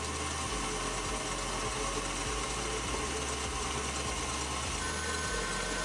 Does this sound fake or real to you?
real